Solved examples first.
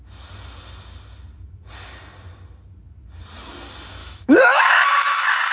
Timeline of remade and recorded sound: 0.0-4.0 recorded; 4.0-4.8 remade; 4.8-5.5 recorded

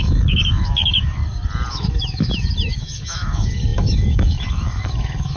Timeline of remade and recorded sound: 0.0-1.2 remade; 1.2-1.7 recorded; 1.7-5.4 remade

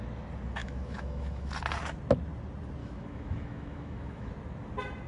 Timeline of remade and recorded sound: 0.0-0.6 recorded; 0.6-1.5 remade; 1.5-2.8 recorded; 2.8-4.3 remade; 4.3-5.1 recorded

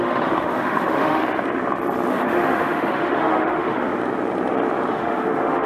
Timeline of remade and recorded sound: 0.0-1.2 remade; 1.2-2.1 recorded; 2.1-4.0 remade; 4.0-4.9 recorded; 4.9-5.7 remade

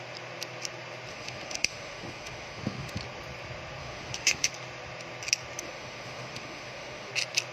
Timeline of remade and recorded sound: 0.0-1.1 recorded; 1.1-3.0 remade; 3.0-3.8 recorded; 3.8-4.5 remade; 4.5-5.6 recorded; 5.6-7.1 remade; 7.1-7.5 recorded

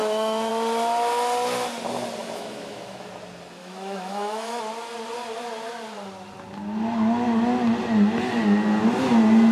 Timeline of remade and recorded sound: 0.0-0.5 remade; 0.5-2.2 recorded; 2.2-3.1 remade; 3.1-3.6 recorded; 3.6-4.6 remade; 4.6-9.5 recorded

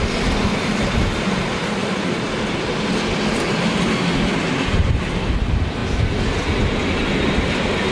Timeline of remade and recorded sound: 0.0-7.9 recorded

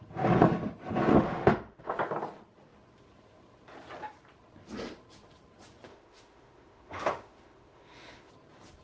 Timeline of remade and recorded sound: 0.0-1.1 recorded; 1.1-2.0 remade; 2.0-5.9 recorded; 5.9-8.3 remade; 8.3-8.8 recorded